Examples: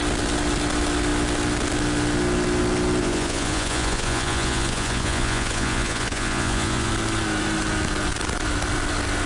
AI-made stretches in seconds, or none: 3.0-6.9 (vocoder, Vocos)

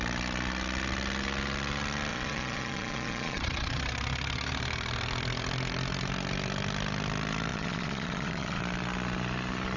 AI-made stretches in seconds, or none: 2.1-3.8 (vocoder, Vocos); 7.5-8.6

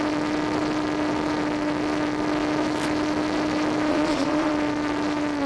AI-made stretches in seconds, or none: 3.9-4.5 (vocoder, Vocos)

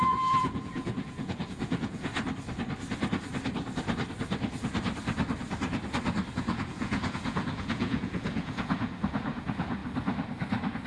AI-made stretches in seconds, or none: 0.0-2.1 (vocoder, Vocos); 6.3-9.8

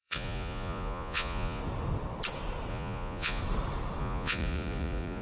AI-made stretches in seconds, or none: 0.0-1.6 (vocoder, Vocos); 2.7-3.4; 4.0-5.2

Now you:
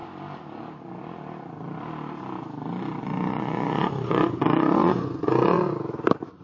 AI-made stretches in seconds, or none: 3.0-5.6 (vocoder, Vocos)

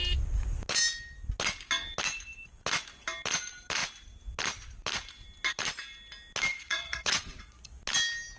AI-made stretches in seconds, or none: 6.5-7.8 (vocoder, Vocos)